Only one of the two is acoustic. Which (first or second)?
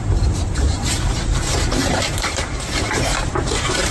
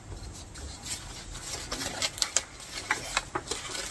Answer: second